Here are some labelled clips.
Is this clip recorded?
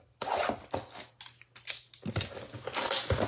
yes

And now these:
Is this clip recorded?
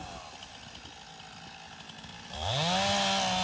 yes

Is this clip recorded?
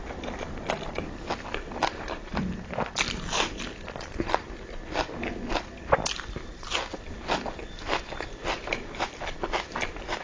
yes